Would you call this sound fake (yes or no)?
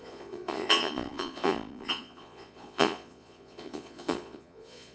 yes